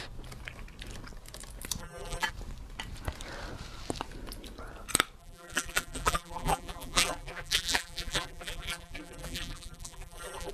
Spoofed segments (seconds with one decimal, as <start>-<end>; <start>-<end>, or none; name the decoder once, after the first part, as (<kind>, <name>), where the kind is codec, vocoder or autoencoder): 1.8-2.3 (vocoder, BigVGAN v2); 5.2-10.5